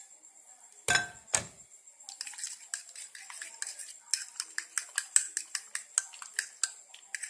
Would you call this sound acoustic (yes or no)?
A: yes